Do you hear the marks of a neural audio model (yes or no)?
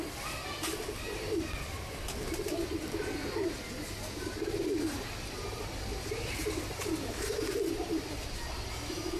yes